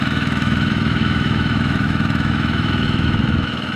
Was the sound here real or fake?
fake